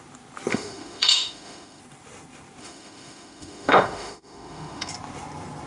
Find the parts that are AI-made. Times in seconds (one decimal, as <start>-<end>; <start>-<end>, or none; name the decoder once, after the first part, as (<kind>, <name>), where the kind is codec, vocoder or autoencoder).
0.5-1.8 (autoencoder, DAC-VAE); 2.6-4.9